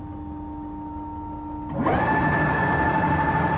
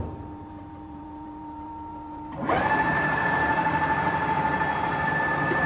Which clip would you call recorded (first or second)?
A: first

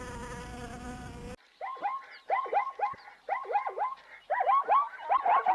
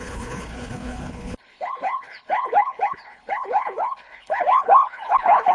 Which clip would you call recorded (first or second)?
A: first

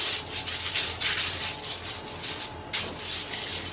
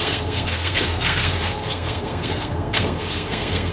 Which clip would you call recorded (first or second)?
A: first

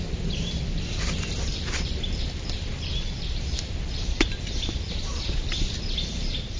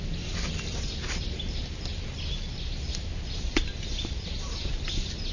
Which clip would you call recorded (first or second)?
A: second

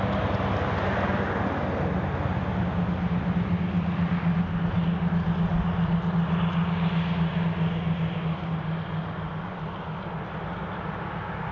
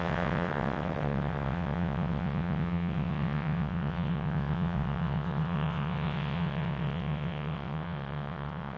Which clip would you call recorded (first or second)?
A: first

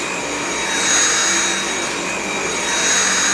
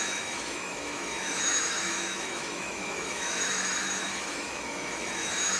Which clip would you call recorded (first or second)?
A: first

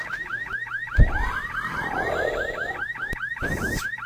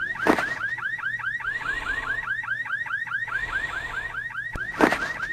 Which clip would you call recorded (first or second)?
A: first